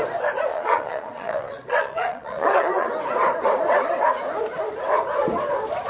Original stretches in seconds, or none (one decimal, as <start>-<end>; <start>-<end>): 0.0-0.5; 2.9-5.9

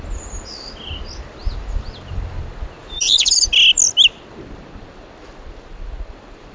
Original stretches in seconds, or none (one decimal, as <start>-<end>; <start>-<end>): 0.0-2.8; 3.5-6.5